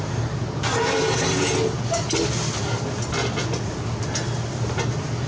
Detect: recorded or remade recorded